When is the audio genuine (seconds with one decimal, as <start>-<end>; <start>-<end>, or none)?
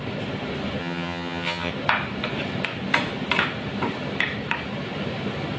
0.0-0.8; 1.7-5.6